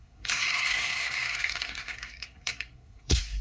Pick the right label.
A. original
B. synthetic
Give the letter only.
B